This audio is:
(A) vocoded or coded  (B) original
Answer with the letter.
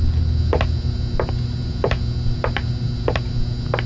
B